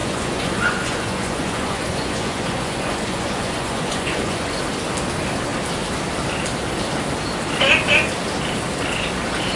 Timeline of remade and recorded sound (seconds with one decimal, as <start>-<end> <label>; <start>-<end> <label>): 0.0-4.6 remade; 4.6-9.6 recorded